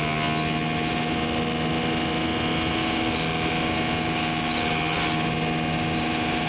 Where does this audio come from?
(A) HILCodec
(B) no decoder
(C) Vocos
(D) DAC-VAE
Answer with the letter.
B